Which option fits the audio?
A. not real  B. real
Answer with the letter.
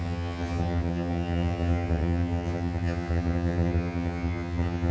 A